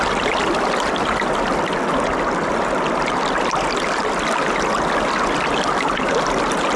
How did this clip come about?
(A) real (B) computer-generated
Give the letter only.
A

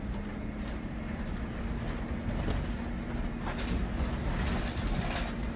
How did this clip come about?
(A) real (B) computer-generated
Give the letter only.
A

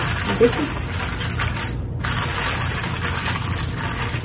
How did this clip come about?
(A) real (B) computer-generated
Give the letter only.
A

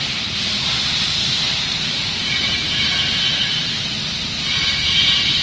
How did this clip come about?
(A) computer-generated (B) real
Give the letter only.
A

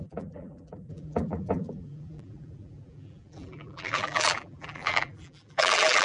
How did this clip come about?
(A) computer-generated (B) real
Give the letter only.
A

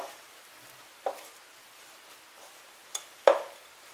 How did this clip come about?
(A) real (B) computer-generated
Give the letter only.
A